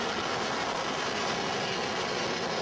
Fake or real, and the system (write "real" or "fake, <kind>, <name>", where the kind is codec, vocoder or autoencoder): real